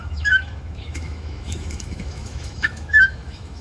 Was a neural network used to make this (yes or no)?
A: yes